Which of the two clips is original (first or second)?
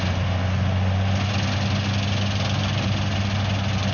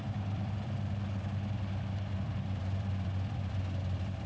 first